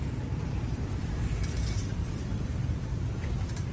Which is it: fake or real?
fake